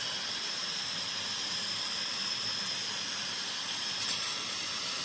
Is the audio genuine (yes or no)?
yes